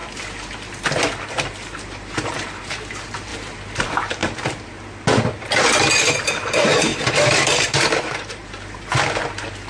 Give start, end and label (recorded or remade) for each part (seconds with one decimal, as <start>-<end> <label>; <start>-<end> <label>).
0.0-1.3 recorded; 1.3-4.2 remade; 4.2-6.0 recorded; 6.0-9.7 remade